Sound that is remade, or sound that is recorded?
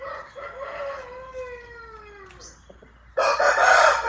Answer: recorded